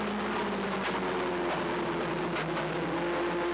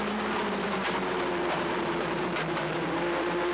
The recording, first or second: first